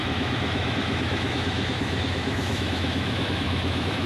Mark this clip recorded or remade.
remade